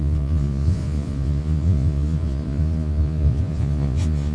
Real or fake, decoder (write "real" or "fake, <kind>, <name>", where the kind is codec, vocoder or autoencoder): fake, vocoder, Vocos